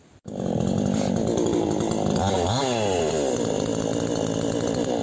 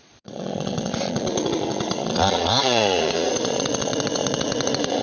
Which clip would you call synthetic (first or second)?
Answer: second